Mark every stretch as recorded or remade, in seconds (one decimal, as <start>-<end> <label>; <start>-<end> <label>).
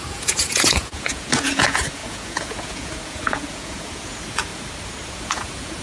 0.0-4.5 remade; 4.5-5.1 recorded; 5.1-5.8 remade